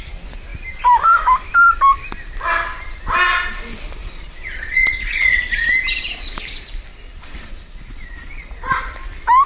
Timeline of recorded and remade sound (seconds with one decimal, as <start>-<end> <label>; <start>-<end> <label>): 0.0-4.0 recorded; 4.0-5.4 remade; 5.4-6.9 recorded; 6.9-8.8 remade; 8.8-9.5 recorded